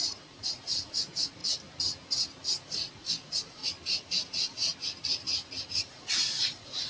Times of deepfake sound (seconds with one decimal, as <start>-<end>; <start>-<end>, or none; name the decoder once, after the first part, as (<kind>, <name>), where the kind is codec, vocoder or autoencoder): 0.0-1.4 (vocoder, Vocos); 2.6-3.6; 4.3-4.7; 5.9-6.9